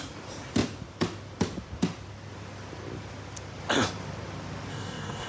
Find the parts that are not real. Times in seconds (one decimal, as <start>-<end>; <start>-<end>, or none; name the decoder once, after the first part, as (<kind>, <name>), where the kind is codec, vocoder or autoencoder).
4.7-5.3 (codec, DAC)